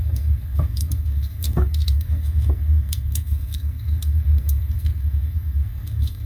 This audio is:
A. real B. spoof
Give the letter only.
B